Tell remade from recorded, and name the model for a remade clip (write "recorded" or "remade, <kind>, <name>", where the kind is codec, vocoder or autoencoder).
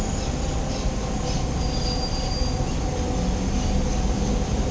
recorded